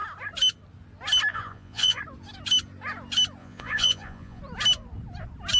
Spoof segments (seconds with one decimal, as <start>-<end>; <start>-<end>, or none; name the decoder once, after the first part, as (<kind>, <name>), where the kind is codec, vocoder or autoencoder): 1.3-2.0 (vocoder, Vocos); 3.4-4.4

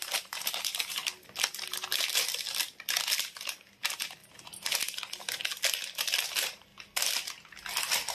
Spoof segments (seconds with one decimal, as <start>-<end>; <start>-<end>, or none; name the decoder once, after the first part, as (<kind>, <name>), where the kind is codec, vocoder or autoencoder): 0.0-1.0 (vocoder, BigVGAN v2); 3.2-4.2; 6.2-6.7

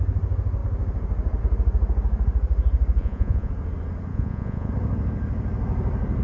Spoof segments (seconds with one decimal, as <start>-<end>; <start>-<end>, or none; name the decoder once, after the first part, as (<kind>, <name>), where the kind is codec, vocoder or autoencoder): 3.0-3.5 (vocoder, Vocos); 4.1-4.7

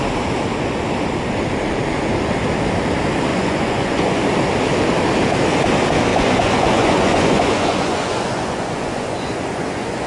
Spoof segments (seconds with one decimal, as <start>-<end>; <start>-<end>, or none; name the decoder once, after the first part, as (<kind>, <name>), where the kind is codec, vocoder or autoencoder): 3.3-4.2 (vocoder, Vocos); 6.1-10.1

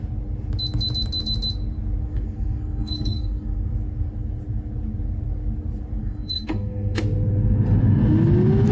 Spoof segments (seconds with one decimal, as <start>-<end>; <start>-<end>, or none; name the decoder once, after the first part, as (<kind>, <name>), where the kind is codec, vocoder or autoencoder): 2.0-3.7 (codec, SNAC); 6.0-7.0

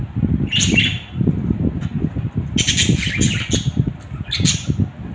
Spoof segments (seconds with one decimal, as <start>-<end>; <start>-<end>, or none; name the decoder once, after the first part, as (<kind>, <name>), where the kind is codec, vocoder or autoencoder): none